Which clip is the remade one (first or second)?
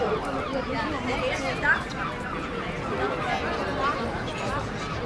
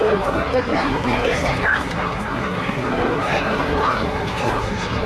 second